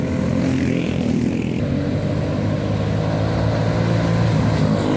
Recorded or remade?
recorded